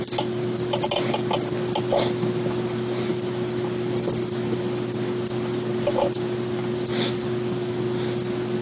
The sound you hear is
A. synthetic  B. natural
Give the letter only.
B